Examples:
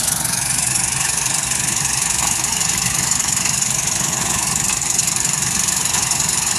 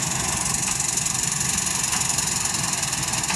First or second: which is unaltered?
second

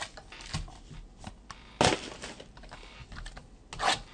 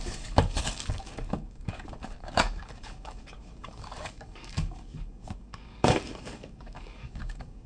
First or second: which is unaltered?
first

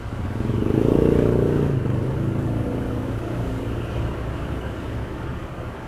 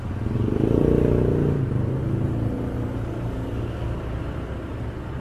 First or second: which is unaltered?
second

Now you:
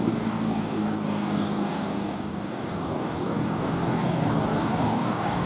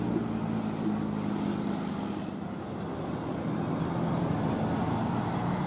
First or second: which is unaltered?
second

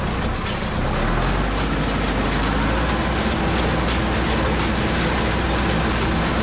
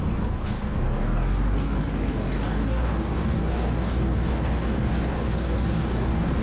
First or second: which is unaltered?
first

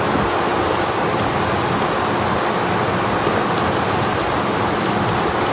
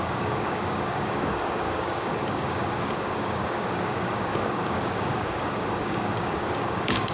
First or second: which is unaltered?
first